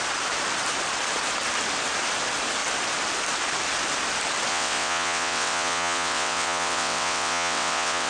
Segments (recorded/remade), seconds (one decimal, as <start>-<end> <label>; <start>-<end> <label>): 0.0-4.5 recorded; 4.5-8.1 remade